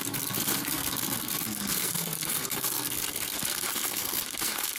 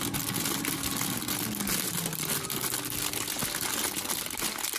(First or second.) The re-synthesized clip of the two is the first